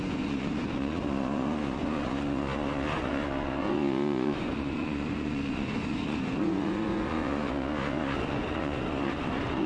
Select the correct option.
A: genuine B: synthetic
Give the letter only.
B